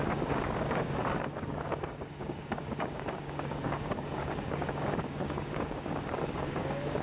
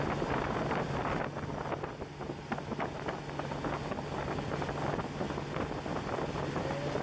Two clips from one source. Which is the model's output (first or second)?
first